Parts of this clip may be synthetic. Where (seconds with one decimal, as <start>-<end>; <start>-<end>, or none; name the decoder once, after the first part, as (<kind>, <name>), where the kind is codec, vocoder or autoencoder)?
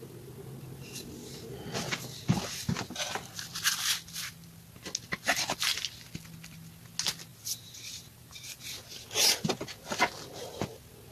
7.3-8.6 (vocoder, BigVGAN v2)